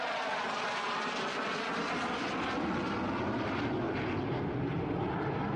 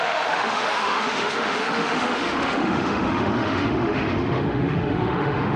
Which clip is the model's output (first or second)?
second